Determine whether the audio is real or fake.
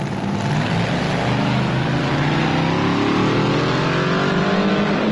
real